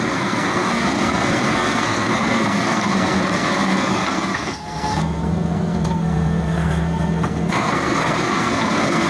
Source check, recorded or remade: remade